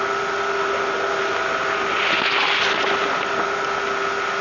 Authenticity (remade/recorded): recorded